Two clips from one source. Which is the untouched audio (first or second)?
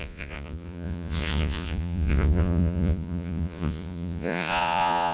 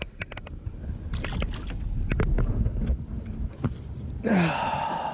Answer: second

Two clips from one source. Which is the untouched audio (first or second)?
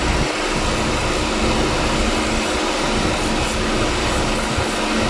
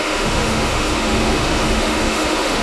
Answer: first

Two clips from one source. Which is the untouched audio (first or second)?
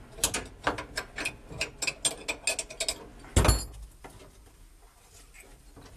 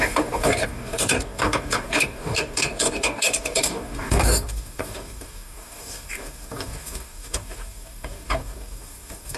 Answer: first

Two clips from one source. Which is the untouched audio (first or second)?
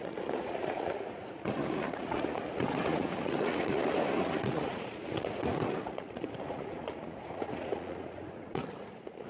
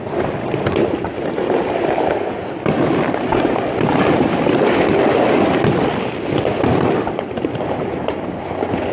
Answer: second